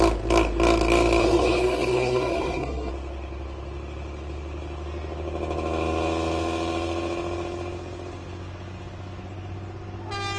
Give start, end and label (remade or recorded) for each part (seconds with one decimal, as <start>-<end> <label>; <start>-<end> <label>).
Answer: 0.0-1.2 recorded; 1.2-2.9 remade; 2.9-10.4 recorded